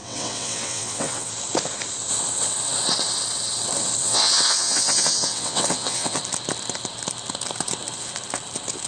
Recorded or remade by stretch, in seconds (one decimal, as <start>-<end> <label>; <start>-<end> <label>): 0.0-1.3 remade; 1.3-4.0 recorded; 4.0-6.2 remade; 6.2-8.9 recorded